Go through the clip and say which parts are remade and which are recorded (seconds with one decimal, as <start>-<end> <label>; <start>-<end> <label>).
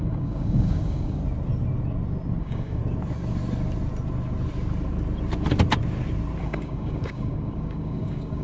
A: 0.0-1.2 remade; 1.2-2.4 recorded; 2.4-2.8 remade; 2.8-6.4 recorded; 6.4-8.4 remade